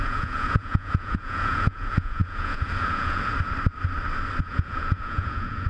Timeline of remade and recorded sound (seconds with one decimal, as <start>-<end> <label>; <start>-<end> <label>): 0.0-3.3 remade; 3.3-4.4 recorded; 4.4-5.7 remade